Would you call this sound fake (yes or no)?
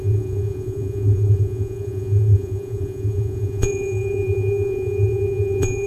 yes